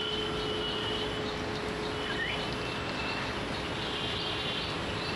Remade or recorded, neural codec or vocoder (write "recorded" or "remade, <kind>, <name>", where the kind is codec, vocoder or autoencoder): recorded